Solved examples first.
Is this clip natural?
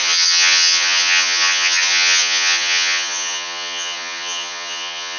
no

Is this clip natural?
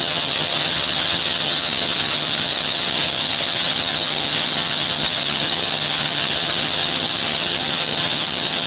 no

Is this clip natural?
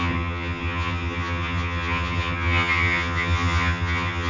no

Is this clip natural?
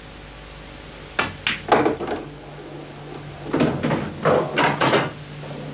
yes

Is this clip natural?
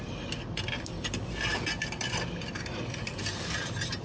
yes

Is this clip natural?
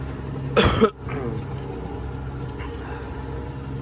yes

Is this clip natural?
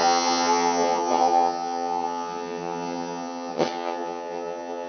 no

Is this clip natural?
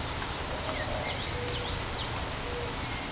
yes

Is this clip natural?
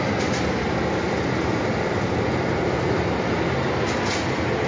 yes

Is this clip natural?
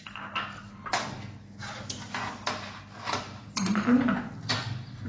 yes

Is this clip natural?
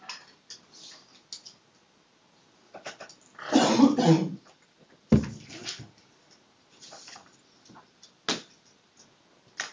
yes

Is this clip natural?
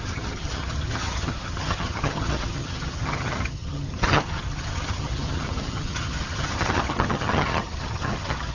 no